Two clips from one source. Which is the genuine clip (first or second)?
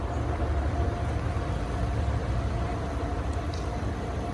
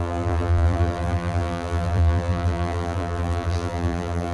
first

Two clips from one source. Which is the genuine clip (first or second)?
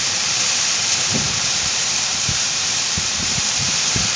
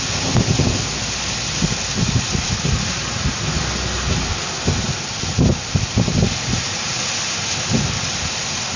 second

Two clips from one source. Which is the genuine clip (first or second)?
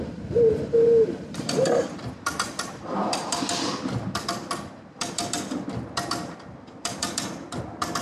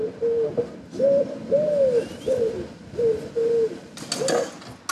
second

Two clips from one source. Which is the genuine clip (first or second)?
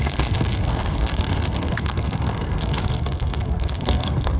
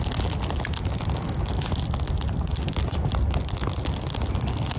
second